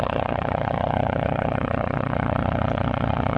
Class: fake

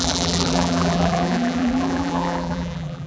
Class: fake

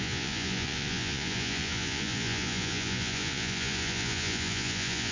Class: fake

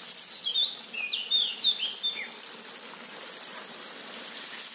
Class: real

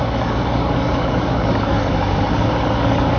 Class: fake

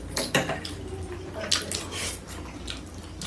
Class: real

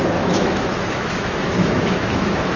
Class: fake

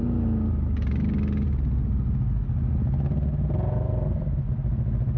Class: real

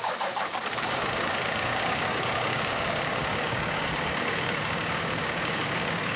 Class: fake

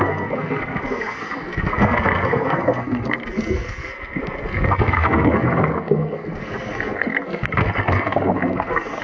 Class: fake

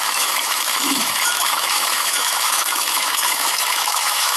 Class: fake